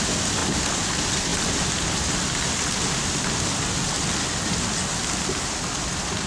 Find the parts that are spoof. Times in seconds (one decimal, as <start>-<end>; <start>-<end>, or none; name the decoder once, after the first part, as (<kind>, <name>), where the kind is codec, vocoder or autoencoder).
none